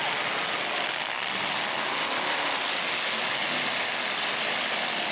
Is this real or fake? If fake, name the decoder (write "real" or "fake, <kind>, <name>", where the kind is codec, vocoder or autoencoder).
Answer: real